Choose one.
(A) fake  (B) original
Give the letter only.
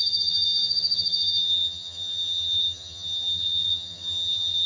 A